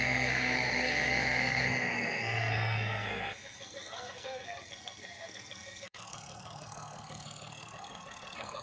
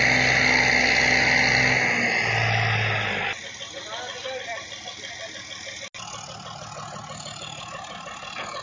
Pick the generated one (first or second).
first